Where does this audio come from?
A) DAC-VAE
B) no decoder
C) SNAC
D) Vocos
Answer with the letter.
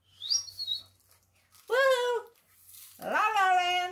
B